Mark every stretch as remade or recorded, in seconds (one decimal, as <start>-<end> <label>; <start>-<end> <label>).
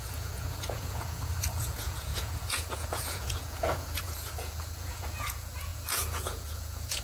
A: 0.0-7.0 remade